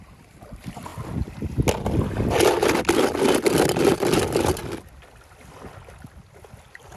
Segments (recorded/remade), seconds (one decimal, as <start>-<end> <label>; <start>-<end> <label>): 0.0-7.0 recorded